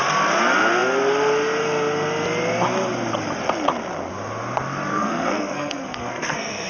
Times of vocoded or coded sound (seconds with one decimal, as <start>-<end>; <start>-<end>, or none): 4.9-6.7